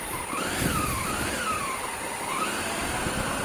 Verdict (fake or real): real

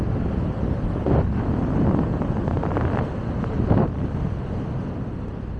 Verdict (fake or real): real